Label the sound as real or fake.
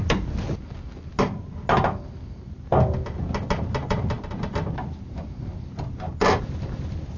real